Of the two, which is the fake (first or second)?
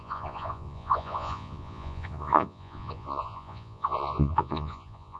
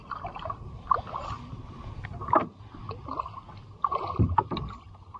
first